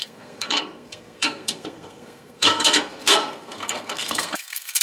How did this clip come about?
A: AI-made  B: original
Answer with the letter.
A